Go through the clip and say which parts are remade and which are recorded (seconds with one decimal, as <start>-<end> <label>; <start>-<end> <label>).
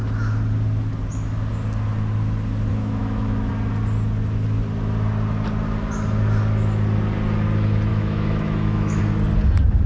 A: 0.0-2.7 recorded; 2.7-3.5 remade; 3.5-7.9 recorded; 7.9-9.0 remade; 9.0-9.9 recorded